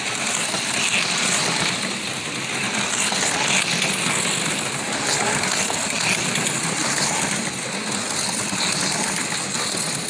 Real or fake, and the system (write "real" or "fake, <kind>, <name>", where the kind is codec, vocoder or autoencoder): real